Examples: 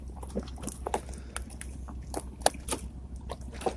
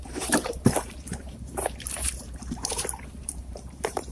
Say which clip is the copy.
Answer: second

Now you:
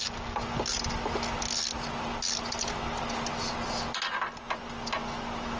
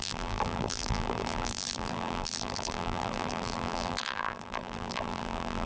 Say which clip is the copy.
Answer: second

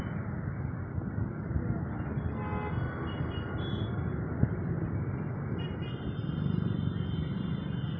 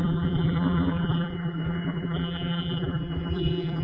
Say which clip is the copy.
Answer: second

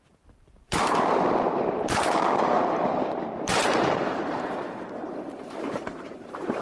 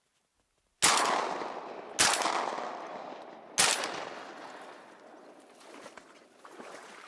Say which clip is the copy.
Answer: first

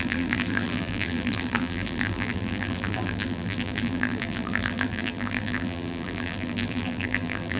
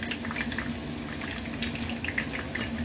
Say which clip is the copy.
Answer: first